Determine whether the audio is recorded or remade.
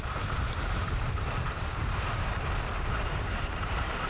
remade